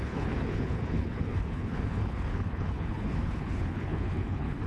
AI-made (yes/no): yes